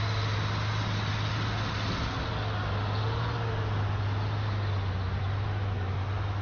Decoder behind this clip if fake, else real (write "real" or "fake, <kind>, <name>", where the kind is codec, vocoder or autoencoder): real